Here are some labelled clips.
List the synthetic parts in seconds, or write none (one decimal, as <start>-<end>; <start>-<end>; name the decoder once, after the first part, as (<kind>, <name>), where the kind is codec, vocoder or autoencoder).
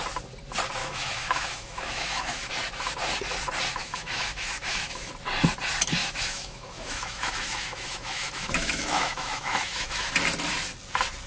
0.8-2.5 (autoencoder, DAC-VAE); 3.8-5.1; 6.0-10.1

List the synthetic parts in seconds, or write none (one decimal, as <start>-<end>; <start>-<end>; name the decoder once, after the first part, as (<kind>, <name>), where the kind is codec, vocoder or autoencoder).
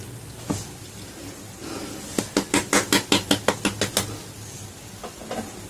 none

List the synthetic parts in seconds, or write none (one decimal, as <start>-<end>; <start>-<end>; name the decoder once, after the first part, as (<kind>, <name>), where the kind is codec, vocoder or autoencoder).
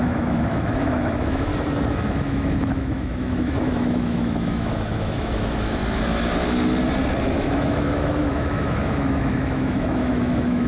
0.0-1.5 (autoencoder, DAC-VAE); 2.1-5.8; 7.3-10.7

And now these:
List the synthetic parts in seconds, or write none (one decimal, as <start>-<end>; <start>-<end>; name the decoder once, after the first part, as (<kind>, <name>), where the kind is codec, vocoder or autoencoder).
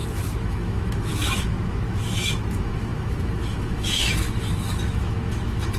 0.0-5.8 (autoencoder, DAC-VAE)